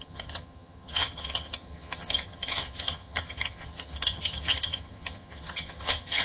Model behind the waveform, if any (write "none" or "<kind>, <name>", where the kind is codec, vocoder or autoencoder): vocoder, HiFi-GAN